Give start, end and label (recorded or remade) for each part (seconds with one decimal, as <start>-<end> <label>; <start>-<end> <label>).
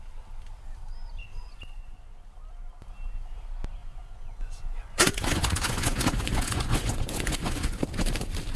0.0-1.2 recorded; 1.2-2.0 remade; 2.0-3.8 recorded; 3.8-7.8 remade; 7.8-8.6 recorded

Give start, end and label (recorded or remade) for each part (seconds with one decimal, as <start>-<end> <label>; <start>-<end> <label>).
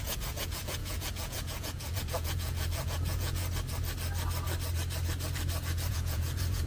0.0-3.4 remade; 3.4-5.9 recorded; 5.9-6.7 remade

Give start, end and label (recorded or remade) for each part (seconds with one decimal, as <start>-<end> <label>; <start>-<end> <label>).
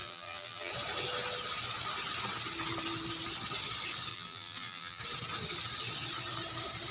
0.0-0.7 remade; 0.7-4.1 recorded; 4.1-5.0 remade; 5.0-6.9 recorded